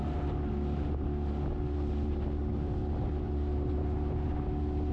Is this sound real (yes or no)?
yes